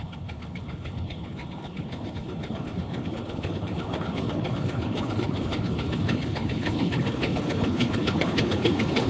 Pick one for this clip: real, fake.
fake